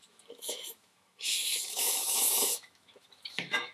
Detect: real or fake fake